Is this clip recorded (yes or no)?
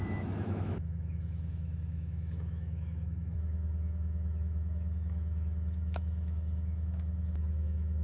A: no